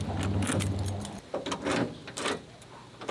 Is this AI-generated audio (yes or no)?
no